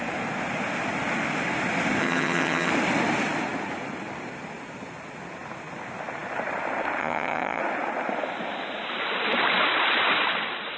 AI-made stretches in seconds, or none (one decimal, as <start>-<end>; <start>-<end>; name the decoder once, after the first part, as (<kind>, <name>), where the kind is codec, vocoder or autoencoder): 2.0-2.7 (vocoder, HiFi-GAN); 7.0-7.6